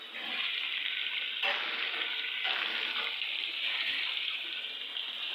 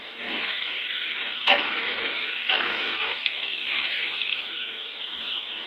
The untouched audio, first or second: first